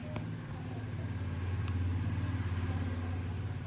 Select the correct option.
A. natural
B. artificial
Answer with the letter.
A